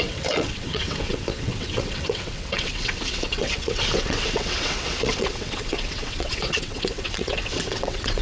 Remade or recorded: remade